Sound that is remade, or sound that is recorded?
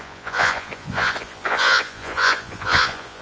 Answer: remade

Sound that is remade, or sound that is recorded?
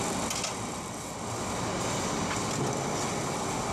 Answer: recorded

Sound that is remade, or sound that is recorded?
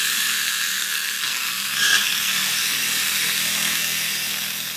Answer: remade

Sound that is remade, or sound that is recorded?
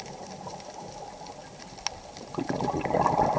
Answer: recorded